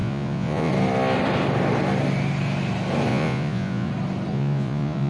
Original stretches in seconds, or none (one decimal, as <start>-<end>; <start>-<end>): 0.7-3.1; 3.9-4.3

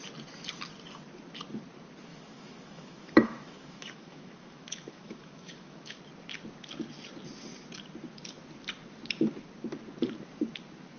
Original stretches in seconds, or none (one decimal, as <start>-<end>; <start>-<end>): 0.0-2.1; 6.0-11.0

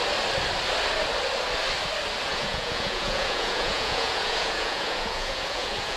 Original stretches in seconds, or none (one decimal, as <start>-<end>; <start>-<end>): 0.0-2.3

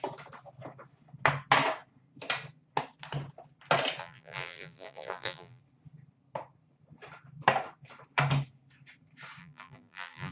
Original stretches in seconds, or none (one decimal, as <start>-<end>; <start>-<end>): 0.0-4.0; 5.6-9.4

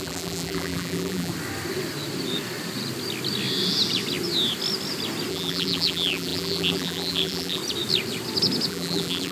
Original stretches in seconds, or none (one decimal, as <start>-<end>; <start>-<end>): 1.3-5.3; 7.6-8.7

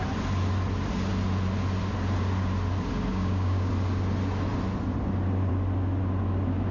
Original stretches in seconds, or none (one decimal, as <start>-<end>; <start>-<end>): 0.0-3.1; 3.7-6.7

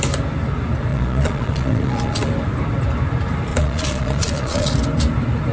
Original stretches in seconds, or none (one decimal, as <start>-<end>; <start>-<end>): 0.0-0.9; 2.3-3.5; 4.7-5.5